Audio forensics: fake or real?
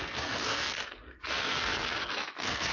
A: fake